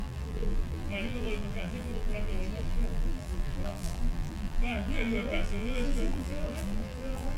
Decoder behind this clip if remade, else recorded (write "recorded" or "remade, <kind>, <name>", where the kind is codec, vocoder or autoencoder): remade, vocoder, BigVGAN v2